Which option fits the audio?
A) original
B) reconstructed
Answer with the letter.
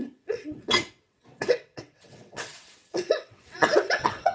B